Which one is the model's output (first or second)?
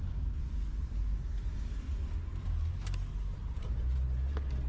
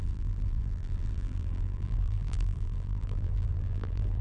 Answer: second